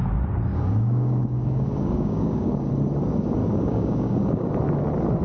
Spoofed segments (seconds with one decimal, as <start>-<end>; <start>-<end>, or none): 0.5-2.7; 3.4-4.5